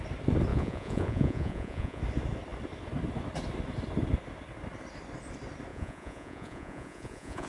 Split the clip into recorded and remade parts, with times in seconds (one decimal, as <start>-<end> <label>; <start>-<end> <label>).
0.0-0.5 recorded; 0.5-2.0 remade; 2.0-5.7 recorded; 5.7-7.5 remade